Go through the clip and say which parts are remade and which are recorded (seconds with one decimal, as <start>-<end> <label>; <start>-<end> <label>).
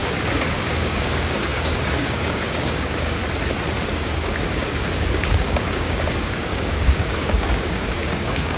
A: 0.0-3.2 remade; 3.2-3.9 recorded; 3.9-8.6 remade